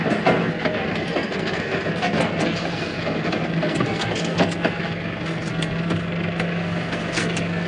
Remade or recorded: remade